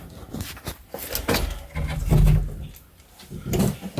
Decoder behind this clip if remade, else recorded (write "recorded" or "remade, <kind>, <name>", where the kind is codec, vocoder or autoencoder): recorded